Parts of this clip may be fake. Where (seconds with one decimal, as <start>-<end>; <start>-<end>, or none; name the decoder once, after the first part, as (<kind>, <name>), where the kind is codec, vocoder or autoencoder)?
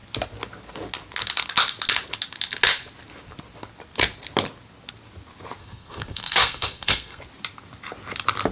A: 5.6-7.2 (codec, SNAC)